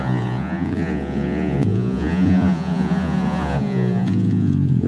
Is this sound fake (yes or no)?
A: yes